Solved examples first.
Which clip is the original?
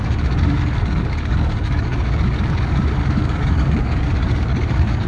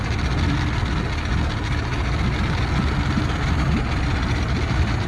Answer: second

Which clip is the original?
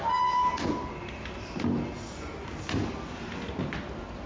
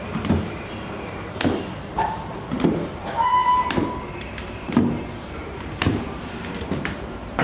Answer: first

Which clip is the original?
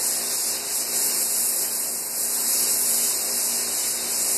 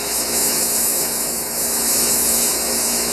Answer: first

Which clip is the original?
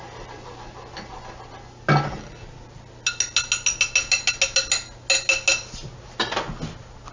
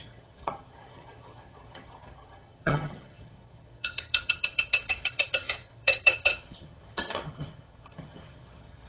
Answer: first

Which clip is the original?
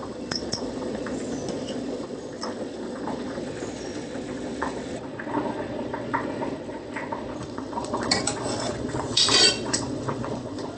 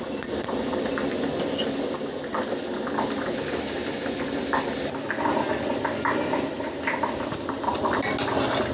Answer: second